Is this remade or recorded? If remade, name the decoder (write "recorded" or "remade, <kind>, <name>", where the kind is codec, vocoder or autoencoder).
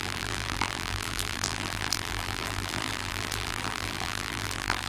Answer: remade, vocoder, BigVGAN v2